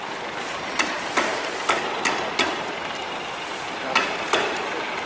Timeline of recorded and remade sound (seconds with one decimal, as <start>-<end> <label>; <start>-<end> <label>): 0.0-5.1 recorded